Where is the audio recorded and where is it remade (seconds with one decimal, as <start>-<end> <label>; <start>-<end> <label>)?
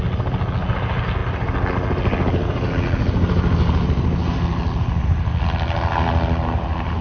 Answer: 0.0-7.0 recorded